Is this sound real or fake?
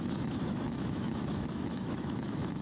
fake